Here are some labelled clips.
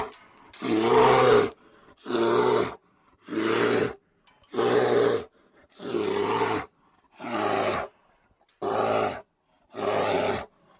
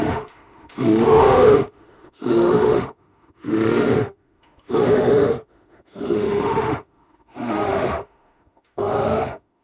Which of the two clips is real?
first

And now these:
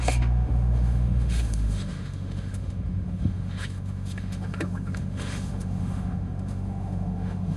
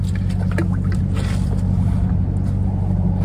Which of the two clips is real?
second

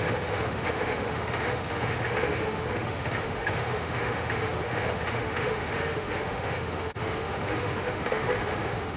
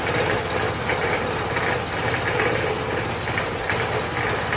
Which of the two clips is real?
second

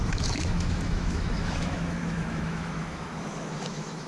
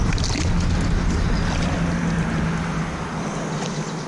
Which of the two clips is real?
second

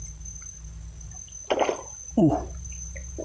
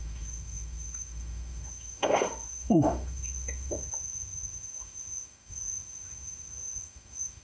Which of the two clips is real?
first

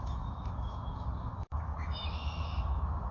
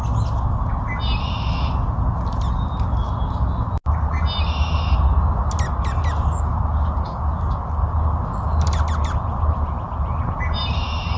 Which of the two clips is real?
second